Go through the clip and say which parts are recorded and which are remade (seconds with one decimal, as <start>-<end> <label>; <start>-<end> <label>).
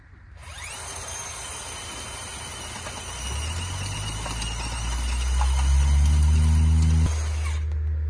0.0-8.1 recorded